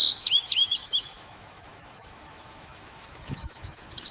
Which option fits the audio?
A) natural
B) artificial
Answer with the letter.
B